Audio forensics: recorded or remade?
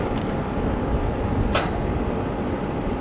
recorded